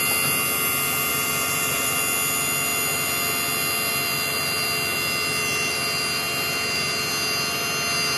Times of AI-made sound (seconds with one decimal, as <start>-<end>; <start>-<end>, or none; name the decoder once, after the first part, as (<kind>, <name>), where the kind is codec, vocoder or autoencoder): 1.1-2.0 (vocoder, BigVGAN v2)